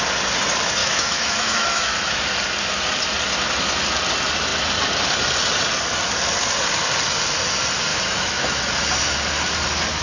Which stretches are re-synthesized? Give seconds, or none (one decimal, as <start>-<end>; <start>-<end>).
0.8-2.2; 7.9-8.7